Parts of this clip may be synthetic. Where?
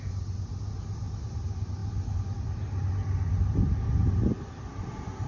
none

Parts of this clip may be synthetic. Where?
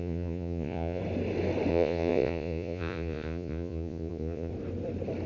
0.0-1.0 (vocoder, Vocos); 1.7-4.5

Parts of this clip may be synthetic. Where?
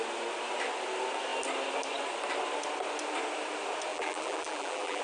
3.9-5.0 (vocoder, BigVGAN v2)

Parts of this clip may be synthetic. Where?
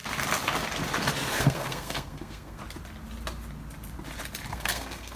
1.3-2.6 (codec, SNAC); 4.5-5.2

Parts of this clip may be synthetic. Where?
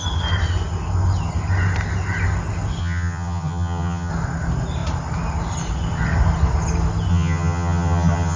2.8-4.1 (vocoder, HiFi-GAN); 7.1-8.4